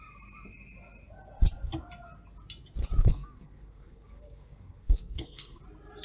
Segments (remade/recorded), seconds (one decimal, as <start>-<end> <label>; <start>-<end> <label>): 0.0-3.0 recorded; 3.0-5.6 remade; 5.6-6.0 recorded